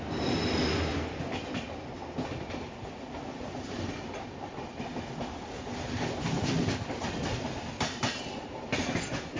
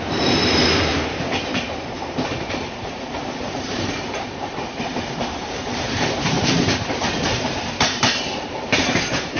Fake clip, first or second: second